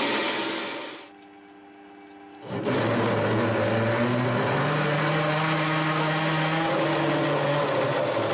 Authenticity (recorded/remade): recorded